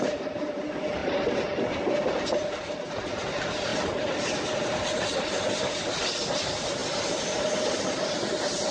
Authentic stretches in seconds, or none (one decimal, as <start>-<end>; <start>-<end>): 0.0-8.7